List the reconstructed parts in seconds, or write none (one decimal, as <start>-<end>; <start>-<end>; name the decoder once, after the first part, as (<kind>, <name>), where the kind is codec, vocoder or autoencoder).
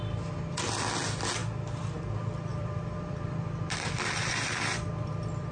2.5-5.1 (vocoder, BigVGAN v2)